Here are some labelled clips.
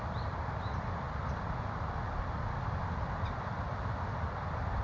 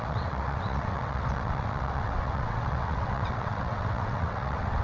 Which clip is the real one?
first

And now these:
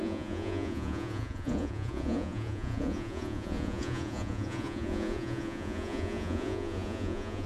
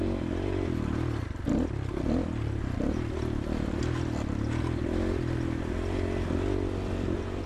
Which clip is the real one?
second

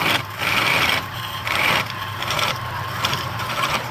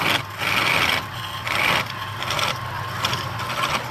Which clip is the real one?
second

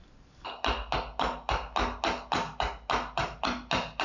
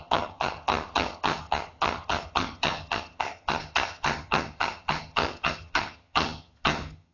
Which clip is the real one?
first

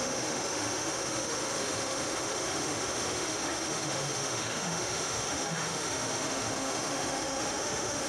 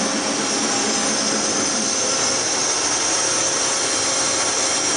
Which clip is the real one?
second